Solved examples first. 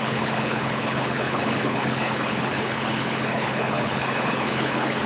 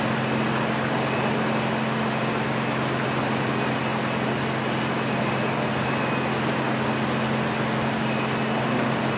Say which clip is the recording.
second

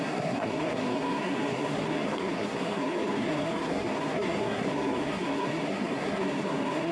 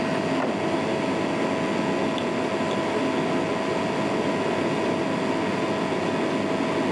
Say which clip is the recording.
second